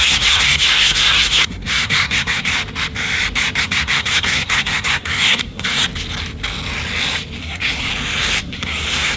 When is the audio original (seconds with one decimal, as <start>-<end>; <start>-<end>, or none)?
2.5-3.6; 5.8-7.4; 7.9-8.4